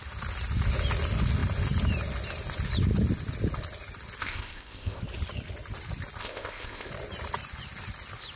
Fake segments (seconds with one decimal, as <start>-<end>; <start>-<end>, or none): 4.2-5.0; 6.2-6.9